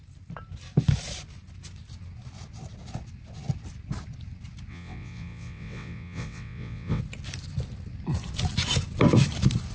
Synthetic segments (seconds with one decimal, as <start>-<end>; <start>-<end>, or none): 4.7-7.0